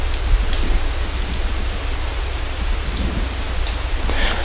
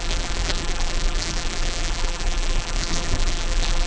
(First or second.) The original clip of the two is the first